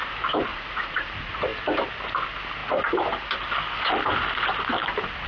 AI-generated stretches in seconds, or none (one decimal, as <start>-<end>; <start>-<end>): 0.5-1.1